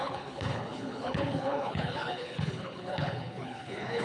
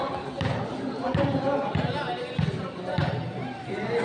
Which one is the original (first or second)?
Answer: second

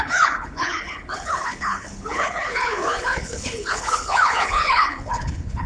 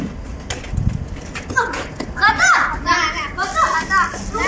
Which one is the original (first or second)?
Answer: second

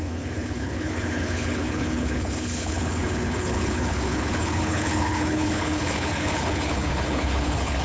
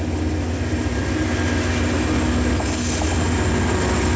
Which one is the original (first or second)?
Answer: second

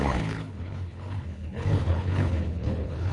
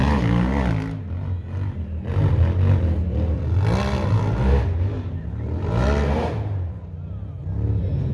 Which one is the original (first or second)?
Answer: second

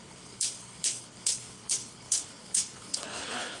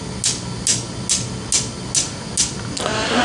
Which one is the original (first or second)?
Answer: second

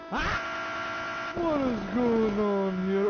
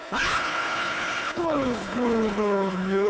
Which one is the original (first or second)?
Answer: first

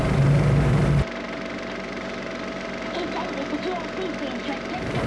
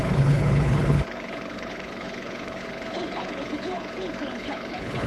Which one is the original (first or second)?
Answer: first